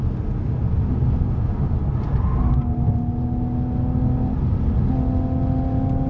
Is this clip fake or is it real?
real